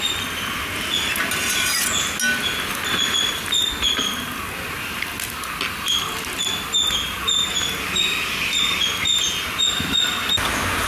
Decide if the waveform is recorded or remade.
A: recorded